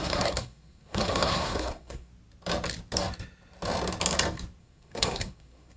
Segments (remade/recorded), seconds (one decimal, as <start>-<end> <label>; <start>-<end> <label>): 0.0-2.1 remade; 2.1-4.6 recorded; 4.6-5.8 remade